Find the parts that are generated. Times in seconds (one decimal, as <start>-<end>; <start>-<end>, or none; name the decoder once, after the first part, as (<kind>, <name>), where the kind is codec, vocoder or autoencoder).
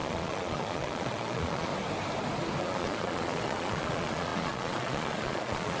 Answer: 0.0-1.7 (vocoder, Vocos); 2.6-5.8